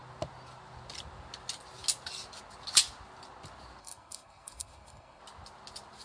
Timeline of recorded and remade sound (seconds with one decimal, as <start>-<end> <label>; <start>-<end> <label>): 0.0-3.8 recorded; 3.8-5.2 remade; 5.2-6.0 recorded